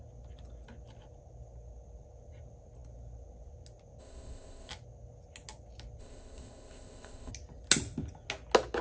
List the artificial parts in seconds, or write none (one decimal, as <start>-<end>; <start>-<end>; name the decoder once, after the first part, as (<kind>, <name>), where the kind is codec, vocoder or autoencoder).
4.0-4.7 (codec, ZipCodec); 6.0-7.3

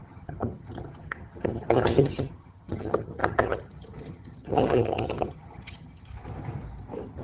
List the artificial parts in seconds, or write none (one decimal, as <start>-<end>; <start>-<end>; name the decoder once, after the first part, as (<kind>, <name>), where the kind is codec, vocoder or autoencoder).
0.0-6.1 (vocoder, HiFi-GAN)

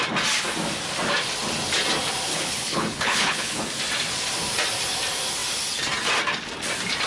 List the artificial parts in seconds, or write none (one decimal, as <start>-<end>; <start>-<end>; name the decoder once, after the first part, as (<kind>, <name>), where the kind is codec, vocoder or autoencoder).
2.3-3.6 (codec, HILCodec)